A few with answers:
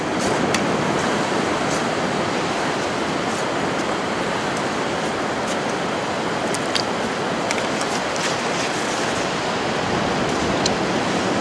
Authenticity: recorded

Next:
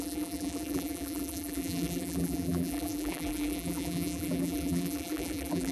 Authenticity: remade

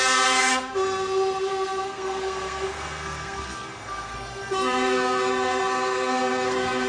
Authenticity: remade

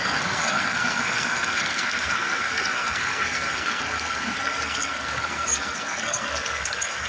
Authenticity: remade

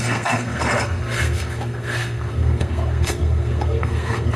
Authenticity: remade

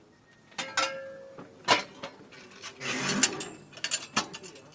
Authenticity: recorded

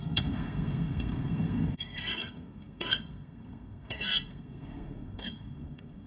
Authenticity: remade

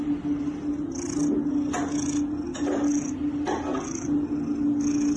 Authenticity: recorded